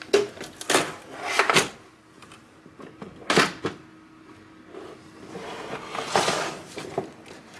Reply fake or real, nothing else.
real